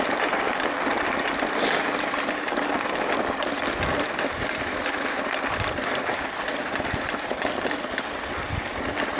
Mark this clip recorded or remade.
recorded